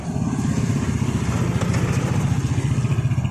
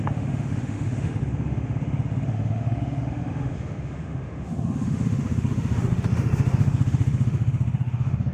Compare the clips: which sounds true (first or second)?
first